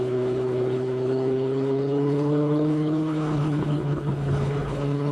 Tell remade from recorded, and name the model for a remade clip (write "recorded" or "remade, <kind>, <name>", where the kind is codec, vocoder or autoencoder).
remade, codec, HILCodec